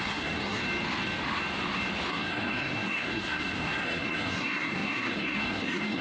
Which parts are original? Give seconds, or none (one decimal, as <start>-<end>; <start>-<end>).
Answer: 0.6-2.1